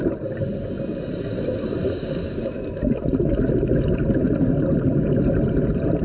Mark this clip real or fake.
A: real